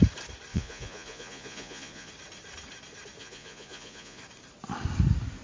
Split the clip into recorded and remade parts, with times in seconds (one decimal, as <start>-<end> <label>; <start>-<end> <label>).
0.0-0.5 recorded; 0.5-2.1 remade; 2.1-3.2 recorded; 3.2-4.2 remade; 4.2-5.4 recorded